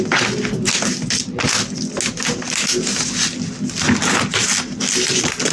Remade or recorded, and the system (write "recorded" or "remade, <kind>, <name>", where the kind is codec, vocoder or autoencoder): recorded